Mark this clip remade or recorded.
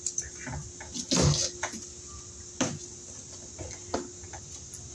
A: recorded